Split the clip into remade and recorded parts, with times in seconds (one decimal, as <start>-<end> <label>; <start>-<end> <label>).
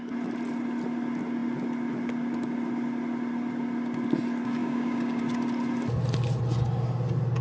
0.0-4.6 recorded; 4.6-5.2 remade; 5.2-7.4 recorded